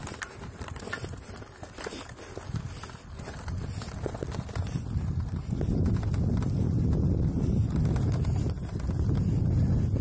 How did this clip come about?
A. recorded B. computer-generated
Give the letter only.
A